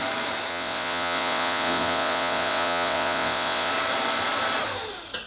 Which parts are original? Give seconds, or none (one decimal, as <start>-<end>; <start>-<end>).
0.0-0.5; 3.7-5.3